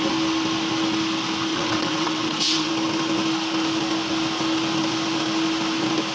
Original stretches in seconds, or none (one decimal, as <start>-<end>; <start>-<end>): 0.0-1.5; 2.7-6.1